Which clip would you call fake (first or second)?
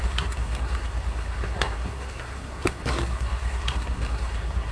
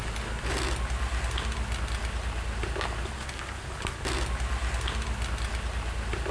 first